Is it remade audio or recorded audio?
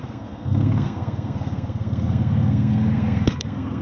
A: remade